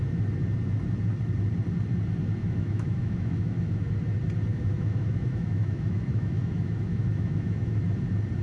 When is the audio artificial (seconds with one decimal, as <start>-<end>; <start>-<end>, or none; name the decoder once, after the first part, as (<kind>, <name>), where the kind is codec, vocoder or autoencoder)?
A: 2.4-3.9 (autoencoder, DAC-VAE); 4.5-7.8